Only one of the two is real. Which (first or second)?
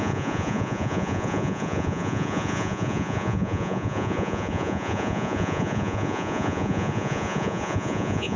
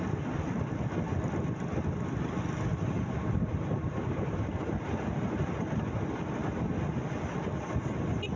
second